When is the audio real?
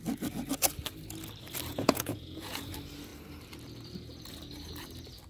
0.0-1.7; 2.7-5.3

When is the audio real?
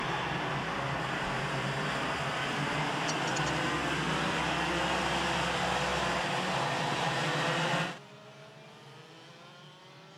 0.0-10.2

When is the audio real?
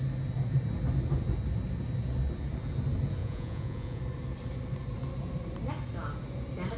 0.0-3.2; 4.0-6.8